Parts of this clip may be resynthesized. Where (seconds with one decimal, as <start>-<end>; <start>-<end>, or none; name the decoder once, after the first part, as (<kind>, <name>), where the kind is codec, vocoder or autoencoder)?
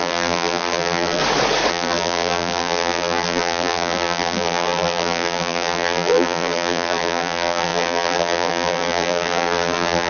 0.0-1.2 (vocoder, BigVGAN v2); 1.7-10.1